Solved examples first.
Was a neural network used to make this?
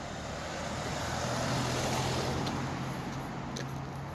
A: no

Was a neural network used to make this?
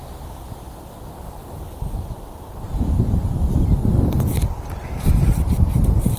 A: no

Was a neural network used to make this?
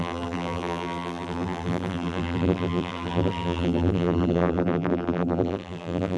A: yes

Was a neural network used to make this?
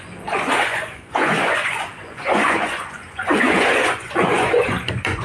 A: yes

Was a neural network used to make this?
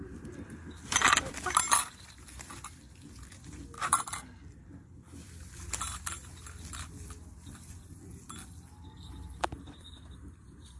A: no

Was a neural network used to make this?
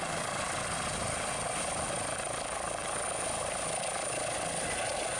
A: no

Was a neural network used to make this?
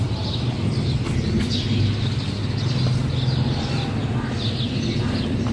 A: no